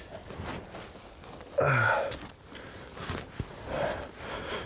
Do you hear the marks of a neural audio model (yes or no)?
no